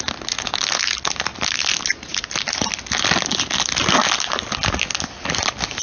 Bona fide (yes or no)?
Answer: yes